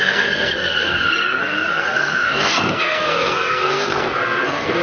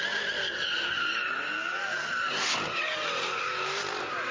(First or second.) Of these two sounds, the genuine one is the second